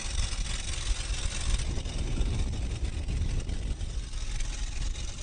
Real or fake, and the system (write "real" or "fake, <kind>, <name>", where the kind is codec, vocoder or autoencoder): real